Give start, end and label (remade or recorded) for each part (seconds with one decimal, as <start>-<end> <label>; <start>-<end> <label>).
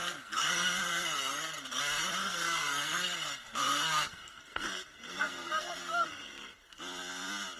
0.0-1.8 remade; 1.8-2.2 recorded; 2.2-6.8 remade; 6.8-7.6 recorded